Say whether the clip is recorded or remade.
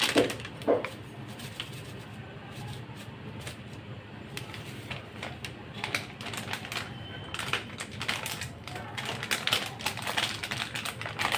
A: recorded